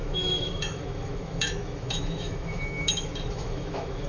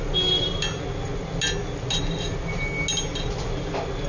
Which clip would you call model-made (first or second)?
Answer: first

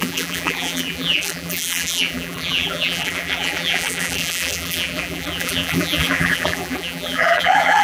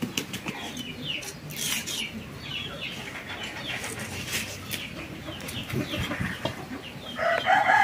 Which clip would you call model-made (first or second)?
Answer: first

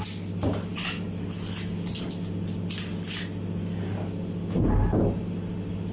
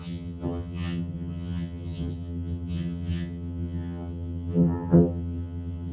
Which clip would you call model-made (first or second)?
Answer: second